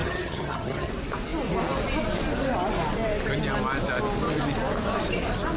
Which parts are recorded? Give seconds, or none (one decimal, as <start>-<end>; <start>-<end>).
0.9-5.6